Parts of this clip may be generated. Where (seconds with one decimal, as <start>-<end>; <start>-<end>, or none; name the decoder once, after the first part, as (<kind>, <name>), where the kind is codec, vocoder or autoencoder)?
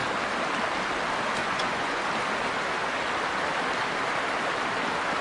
1.4-2.0 (vocoder, Vocos)